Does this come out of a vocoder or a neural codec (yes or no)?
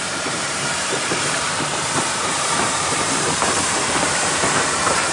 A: yes